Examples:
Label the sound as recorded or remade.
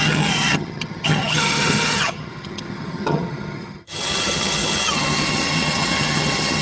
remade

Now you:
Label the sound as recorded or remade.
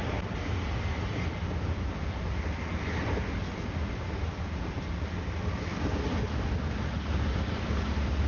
recorded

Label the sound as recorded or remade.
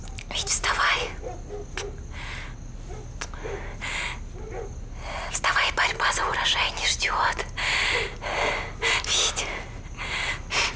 recorded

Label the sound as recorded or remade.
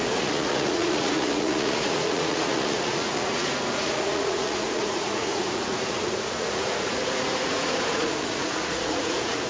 remade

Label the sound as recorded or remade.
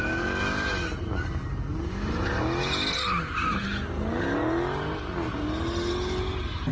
recorded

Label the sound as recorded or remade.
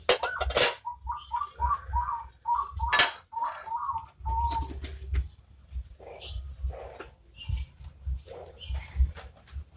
recorded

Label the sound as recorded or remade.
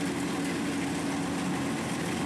recorded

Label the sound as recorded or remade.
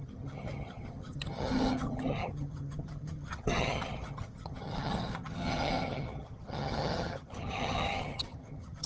remade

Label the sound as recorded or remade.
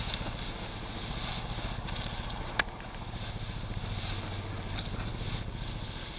recorded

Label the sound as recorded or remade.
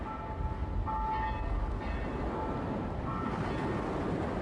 recorded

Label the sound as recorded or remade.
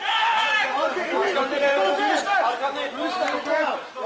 recorded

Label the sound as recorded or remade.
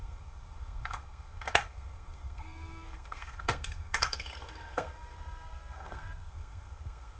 remade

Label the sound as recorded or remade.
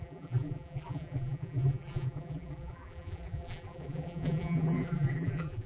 remade